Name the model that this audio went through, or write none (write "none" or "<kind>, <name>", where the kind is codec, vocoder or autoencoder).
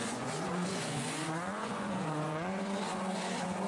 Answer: vocoder, Vocos